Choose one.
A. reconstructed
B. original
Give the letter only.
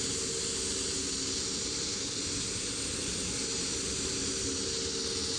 B